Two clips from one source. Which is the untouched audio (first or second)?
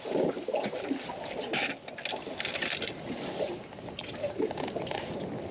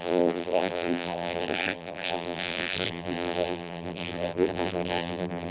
first